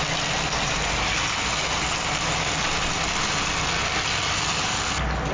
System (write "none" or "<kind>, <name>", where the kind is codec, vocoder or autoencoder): none